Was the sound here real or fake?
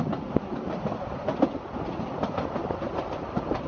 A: real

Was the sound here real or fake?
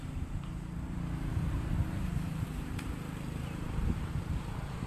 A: fake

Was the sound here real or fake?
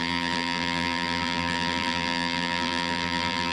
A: fake